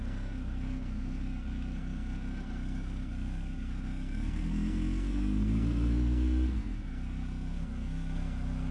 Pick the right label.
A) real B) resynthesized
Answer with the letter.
B